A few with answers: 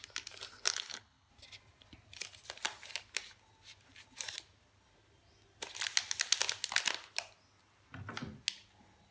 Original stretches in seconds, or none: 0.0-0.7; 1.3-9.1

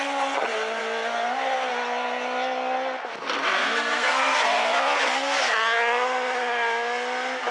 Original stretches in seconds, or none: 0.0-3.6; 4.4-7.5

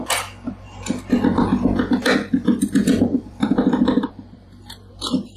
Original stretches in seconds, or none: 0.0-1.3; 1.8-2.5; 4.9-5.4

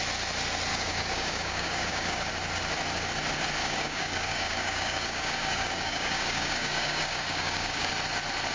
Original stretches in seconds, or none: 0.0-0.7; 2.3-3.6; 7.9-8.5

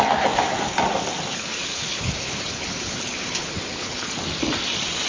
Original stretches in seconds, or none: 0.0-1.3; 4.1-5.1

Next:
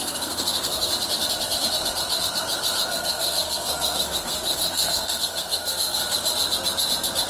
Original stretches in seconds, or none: 0.9-2.9; 6.0-7.3